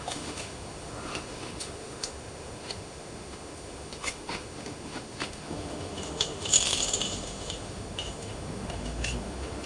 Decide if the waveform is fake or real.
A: fake